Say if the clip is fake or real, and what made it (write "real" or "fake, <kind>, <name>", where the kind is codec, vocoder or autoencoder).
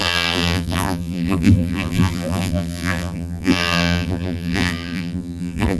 fake, vocoder, BigVGAN v2